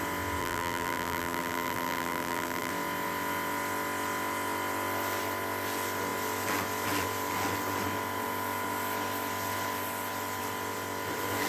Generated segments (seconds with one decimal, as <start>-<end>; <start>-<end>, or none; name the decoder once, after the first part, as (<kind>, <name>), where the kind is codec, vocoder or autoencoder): 0.4-2.7 (vocoder, BigVGAN v2)